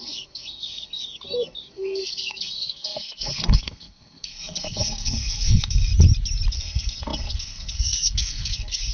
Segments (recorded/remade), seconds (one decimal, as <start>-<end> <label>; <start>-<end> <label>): 0.0-5.9 remade; 5.9-6.5 recorded; 6.5-8.9 remade